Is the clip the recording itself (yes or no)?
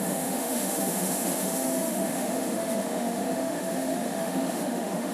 no